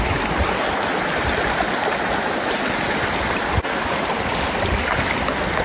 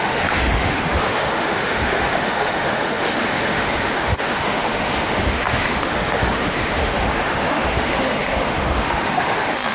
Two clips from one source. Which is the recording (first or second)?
first